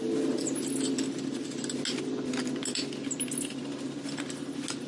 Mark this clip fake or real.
real